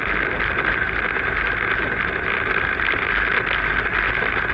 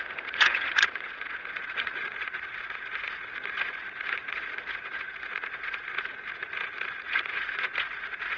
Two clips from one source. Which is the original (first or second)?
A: first